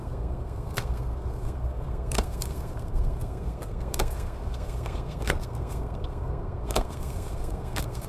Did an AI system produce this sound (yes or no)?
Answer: yes